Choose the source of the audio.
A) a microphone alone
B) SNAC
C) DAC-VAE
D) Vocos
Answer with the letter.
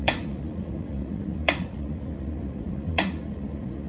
D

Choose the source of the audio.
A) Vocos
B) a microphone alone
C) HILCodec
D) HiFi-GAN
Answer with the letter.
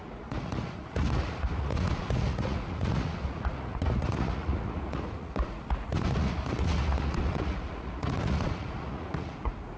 A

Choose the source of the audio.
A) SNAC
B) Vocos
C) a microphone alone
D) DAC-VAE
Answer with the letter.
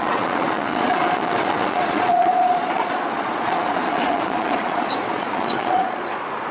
B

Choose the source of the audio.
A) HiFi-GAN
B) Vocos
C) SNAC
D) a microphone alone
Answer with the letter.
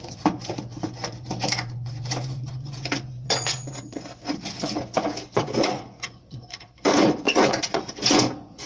B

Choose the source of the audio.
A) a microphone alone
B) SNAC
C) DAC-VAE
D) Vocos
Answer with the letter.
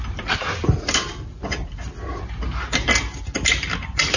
A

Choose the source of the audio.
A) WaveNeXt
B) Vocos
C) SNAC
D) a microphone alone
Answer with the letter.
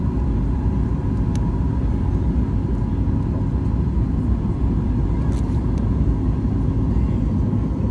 D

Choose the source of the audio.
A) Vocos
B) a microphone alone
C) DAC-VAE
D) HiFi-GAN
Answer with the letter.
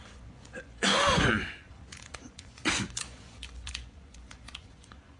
A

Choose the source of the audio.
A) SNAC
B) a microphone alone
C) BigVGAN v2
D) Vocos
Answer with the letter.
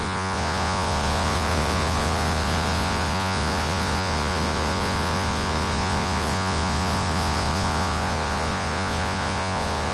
D